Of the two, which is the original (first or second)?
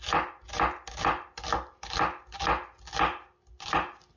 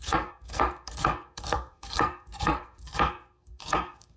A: first